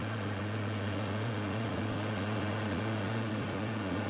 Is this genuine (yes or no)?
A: no